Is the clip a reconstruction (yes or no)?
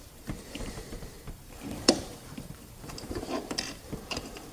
yes